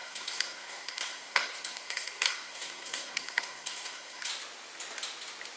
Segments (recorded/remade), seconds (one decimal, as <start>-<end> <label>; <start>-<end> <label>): 0.0-4.3 remade; 4.3-5.6 recorded